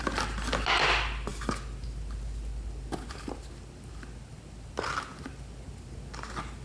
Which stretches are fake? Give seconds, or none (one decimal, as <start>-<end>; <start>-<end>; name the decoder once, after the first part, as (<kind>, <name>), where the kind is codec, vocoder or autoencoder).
none